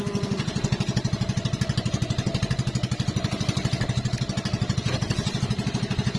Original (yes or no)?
yes